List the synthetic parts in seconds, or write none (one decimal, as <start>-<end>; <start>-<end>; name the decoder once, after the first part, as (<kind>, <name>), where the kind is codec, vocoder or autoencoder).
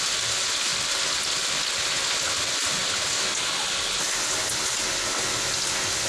0.7-1.5 (vocoder, BigVGAN v2)